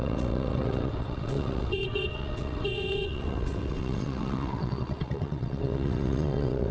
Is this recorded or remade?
remade